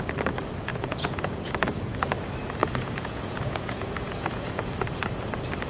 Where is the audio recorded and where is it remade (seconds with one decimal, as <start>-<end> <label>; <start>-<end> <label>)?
0.0-0.7 recorded; 0.7-1.5 remade; 1.5-2.6 recorded; 2.6-4.7 remade; 4.7-5.7 recorded

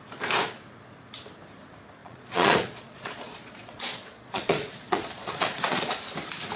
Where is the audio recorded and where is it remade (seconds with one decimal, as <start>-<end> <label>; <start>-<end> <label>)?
0.0-2.0 recorded; 2.0-6.0 remade; 6.0-6.6 recorded

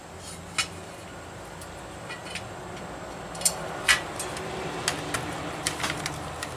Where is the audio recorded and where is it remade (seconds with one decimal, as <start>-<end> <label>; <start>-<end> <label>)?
0.0-6.6 recorded